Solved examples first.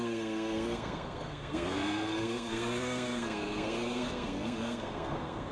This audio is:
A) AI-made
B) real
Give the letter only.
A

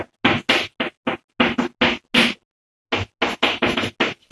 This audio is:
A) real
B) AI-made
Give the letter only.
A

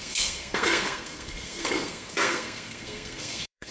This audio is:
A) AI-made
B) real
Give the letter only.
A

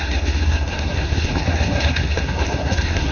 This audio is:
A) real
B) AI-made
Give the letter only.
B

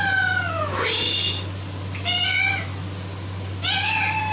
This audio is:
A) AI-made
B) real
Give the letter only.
B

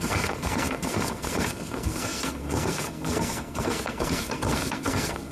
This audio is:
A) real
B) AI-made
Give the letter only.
B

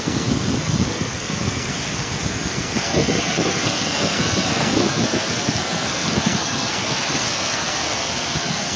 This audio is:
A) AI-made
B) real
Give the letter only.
A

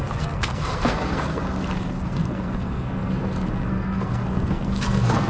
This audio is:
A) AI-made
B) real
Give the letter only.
A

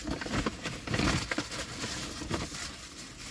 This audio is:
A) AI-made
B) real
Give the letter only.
B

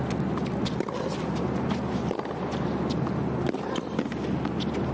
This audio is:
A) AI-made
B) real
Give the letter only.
B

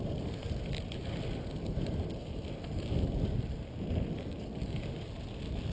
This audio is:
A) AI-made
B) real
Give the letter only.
B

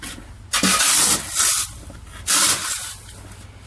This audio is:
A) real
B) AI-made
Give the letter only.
A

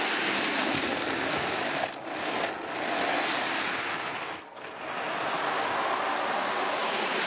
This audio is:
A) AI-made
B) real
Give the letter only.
B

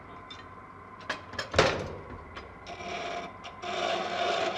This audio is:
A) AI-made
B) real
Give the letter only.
B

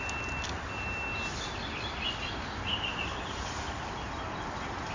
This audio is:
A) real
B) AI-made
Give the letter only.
A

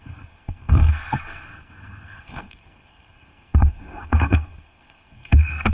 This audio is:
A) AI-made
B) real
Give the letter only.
A